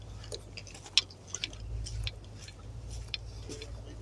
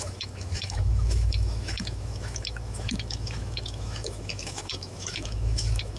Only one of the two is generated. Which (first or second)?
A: second